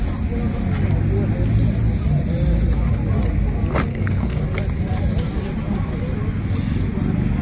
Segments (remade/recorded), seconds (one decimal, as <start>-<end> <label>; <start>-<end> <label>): 0.0-3.9 recorded; 3.9-4.4 remade; 4.4-7.4 recorded

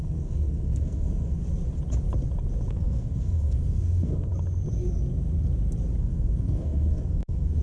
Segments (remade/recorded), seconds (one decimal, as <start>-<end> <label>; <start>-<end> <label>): 0.0-1.4 remade; 1.4-2.7 recorded; 2.7-4.3 remade; 4.3-6.0 recorded; 6.0-7.6 remade

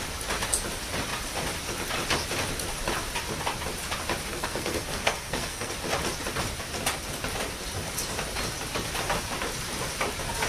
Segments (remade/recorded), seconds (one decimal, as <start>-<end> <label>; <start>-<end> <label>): 0.0-4.3 recorded; 4.3-5.7 remade; 5.7-10.5 recorded

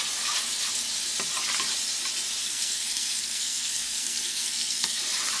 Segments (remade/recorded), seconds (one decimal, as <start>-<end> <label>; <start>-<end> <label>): 0.0-2.4 recorded; 2.4-5.0 remade; 5.0-5.4 recorded